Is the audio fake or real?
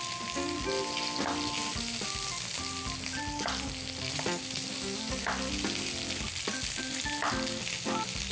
real